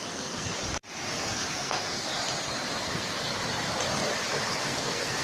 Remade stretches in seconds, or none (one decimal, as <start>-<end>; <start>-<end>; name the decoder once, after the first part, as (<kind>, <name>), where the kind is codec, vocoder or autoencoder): 0.0-0.5 (codec, SNAC); 1.1-2.1; 2.8-3.3; 4.6-5.2